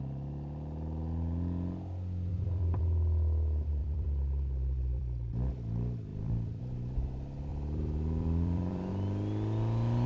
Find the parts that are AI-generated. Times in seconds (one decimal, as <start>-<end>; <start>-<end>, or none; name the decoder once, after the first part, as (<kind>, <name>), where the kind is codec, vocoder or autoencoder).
2.3-2.8 (vocoder, BigVGAN v2); 3.8-5.5; 6.1-6.6; 7.5-8.9